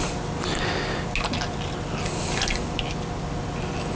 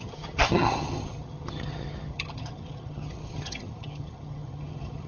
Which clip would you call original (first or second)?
first